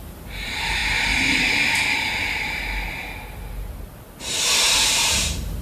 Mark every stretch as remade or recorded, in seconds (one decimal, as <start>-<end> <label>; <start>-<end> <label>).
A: 0.0-0.8 remade; 0.8-4.2 recorded; 4.2-5.6 remade